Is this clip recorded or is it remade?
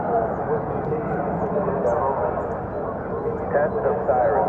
recorded